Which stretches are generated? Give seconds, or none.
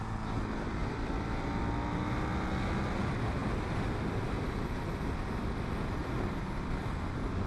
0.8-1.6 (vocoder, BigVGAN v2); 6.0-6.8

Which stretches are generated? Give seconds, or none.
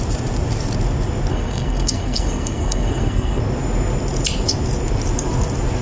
1.3-3.4 (codec, SNAC)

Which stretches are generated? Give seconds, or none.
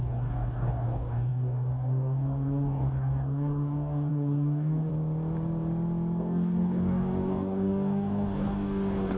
0.0-4.9 (codec, DAC); 6.2-9.2